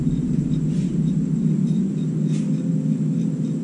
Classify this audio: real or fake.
real